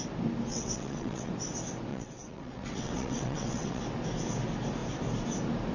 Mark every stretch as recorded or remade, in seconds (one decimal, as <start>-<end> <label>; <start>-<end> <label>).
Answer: 0.0-0.5 recorded; 0.5-1.3 remade; 1.3-1.9 recorded; 1.9-3.8 remade; 3.8-5.7 recorded